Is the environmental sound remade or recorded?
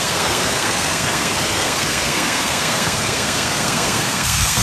remade